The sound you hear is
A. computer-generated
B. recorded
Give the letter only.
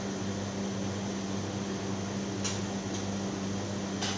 B